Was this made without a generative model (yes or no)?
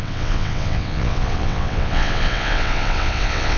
no